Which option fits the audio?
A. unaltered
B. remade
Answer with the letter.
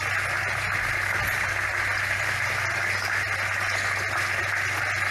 A